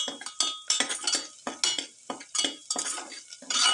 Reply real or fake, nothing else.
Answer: real